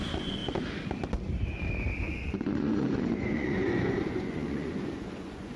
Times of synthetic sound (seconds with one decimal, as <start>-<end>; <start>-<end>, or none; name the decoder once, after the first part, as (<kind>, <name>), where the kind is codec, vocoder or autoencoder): 0.0-0.4 (vocoder, Vocos); 2.0-5.6